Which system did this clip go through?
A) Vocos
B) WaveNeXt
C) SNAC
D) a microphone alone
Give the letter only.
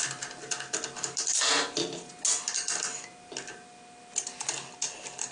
D